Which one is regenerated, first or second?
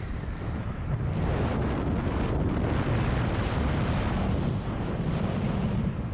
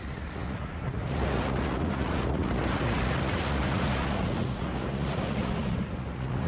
second